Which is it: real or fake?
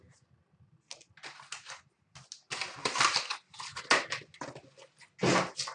real